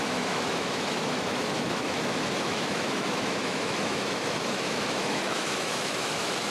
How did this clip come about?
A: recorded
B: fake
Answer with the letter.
B